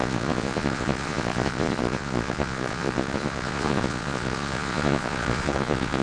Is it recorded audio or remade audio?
remade